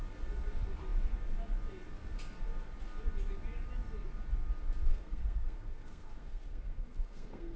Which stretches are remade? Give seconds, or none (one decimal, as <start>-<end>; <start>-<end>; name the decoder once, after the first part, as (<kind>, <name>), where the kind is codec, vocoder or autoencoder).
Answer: 4.9-7.6 (codec, SNAC)